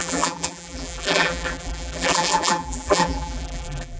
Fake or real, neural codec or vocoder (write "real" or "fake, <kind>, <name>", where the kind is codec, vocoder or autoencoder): fake, vocoder, BigVGAN v2